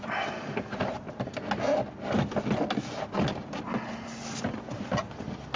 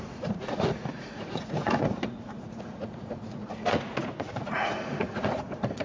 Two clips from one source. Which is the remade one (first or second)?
second